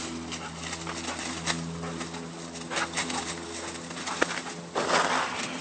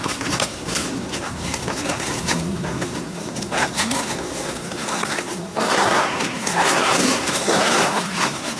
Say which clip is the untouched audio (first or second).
first